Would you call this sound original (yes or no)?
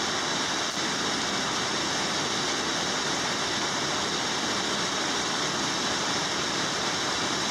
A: yes